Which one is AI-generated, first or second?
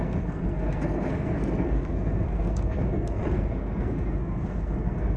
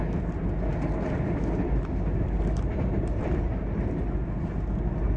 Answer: first